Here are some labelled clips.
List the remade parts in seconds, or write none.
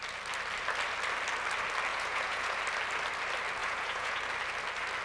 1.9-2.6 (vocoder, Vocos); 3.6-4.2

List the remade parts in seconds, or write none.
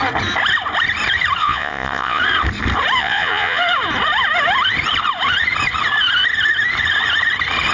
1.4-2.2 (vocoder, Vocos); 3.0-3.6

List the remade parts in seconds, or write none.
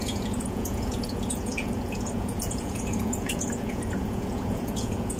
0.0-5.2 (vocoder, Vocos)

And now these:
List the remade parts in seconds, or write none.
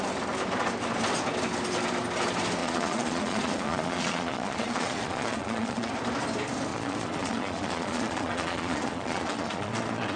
2.6-5.9 (vocoder, Vocos); 6.7-10.2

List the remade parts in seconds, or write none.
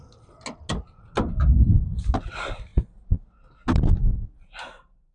none